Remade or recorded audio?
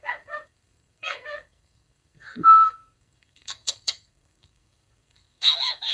remade